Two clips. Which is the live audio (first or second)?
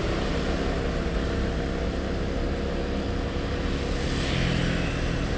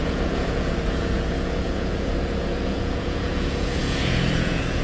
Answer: first